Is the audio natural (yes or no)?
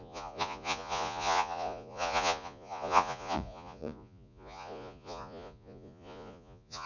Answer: no